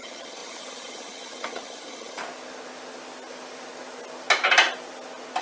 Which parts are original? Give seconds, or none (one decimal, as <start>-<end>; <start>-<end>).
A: 2.2-5.4